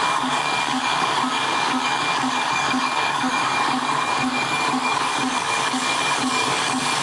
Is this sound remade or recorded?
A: remade